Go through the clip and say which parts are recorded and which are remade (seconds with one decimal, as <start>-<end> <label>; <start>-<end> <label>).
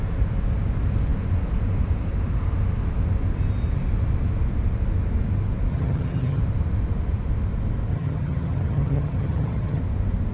0.0-5.7 recorded; 5.7-6.4 remade; 6.4-7.9 recorded; 7.9-9.8 remade; 9.8-10.3 recorded